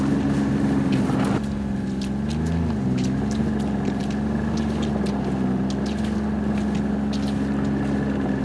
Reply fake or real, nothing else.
real